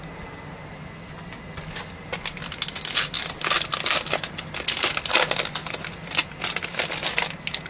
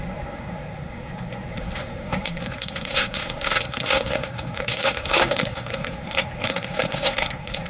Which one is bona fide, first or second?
first